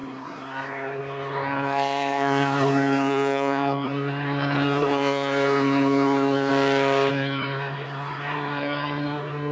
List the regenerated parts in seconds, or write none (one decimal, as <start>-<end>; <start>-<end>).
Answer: 0.0-6.5; 7.1-9.5